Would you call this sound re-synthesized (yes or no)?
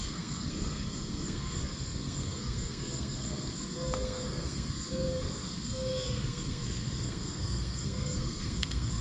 yes